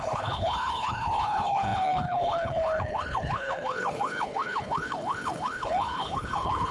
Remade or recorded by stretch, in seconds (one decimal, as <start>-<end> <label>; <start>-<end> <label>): 0.0-6.7 remade